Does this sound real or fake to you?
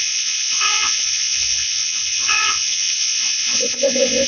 fake